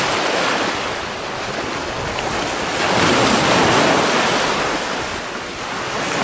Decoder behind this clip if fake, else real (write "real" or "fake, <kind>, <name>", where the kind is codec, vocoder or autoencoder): real